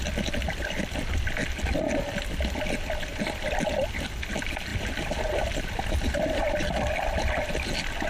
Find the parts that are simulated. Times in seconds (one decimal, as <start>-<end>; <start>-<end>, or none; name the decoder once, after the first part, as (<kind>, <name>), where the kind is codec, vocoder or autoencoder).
3.1-3.6 (vocoder, BigVGAN v2); 4.7-6.7